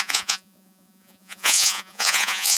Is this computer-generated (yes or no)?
yes